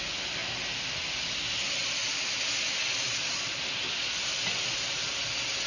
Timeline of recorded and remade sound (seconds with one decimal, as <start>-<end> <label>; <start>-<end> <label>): 0.0-5.7 recorded